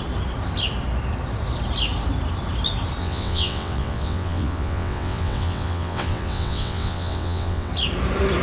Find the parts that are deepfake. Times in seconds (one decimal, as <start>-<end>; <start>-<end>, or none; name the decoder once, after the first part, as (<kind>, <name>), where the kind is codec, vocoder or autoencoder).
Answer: 3.0-7.7 (vocoder, WaveNeXt)